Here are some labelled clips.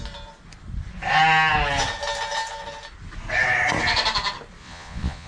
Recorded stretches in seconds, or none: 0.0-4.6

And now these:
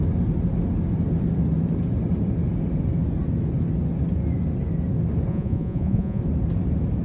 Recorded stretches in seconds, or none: 0.0-5.3; 6.2-7.0

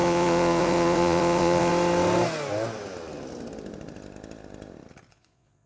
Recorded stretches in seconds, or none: 1.7-5.1

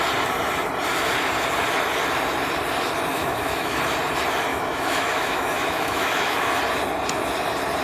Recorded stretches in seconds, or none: 0.0-3.1; 3.8-4.5; 6.6-7.8

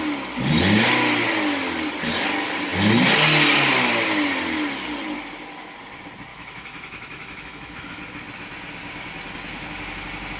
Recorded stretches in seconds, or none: 0.0-6.3; 8.0-10.4